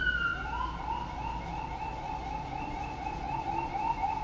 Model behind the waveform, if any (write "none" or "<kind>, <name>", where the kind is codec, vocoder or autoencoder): none